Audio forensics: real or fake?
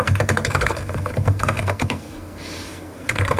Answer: fake